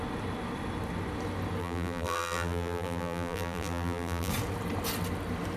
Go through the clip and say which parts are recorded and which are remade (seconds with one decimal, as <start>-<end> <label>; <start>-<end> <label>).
0.0-1.6 recorded; 1.6-4.3 remade; 4.3-5.6 recorded